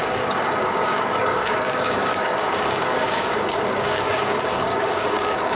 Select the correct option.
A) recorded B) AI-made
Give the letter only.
B